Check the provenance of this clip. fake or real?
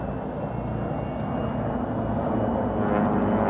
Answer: real